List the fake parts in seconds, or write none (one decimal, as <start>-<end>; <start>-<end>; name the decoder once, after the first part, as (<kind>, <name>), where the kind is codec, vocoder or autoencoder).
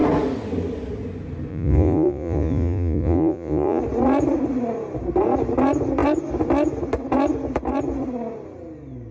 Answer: 1.5-3.8 (vocoder, Vocos)